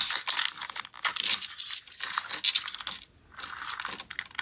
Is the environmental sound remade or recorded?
recorded